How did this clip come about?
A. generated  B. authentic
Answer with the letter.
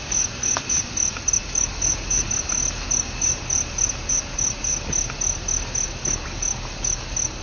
B